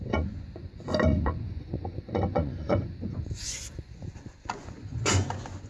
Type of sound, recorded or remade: remade